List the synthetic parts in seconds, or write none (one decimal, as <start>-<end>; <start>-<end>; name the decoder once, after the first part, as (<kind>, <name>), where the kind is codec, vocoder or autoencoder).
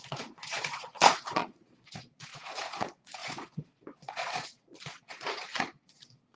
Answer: 0.0-6.4 (vocoder, Vocos)